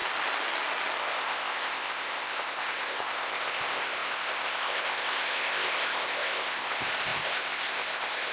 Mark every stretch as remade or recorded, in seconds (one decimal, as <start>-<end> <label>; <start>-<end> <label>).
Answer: 0.0-1.0 recorded; 1.0-8.3 remade